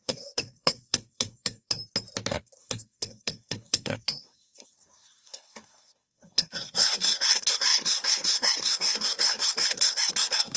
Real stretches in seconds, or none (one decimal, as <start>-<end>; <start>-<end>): 1.8-2.3